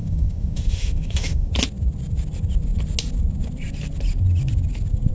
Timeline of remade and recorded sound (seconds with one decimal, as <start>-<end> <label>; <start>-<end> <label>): 0.0-1.5 remade; 1.5-5.1 recorded